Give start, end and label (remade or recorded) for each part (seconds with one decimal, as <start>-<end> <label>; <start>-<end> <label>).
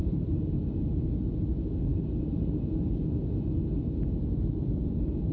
0.0-0.5 remade; 0.5-5.3 recorded